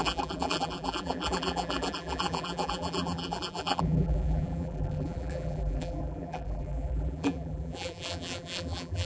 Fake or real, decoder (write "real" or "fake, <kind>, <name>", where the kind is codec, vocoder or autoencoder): fake, vocoder, BigVGAN v2